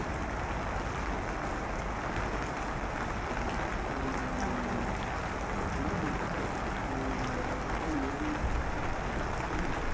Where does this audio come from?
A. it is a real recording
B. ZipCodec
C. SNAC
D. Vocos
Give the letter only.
A